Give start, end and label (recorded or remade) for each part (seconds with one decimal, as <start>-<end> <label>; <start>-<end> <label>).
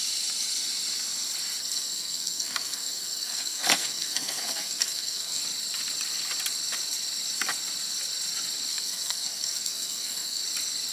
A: 0.0-1.6 recorded; 1.6-5.4 remade; 5.4-8.7 recorded; 8.7-10.4 remade; 10.4-10.9 recorded